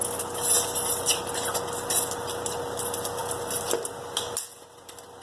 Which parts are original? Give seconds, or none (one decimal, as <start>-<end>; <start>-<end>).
0.0-5.2